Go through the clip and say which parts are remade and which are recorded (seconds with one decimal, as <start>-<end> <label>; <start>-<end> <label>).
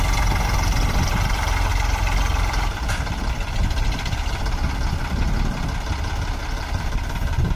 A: 0.0-1.7 recorded; 1.7-4.4 remade; 4.4-7.6 recorded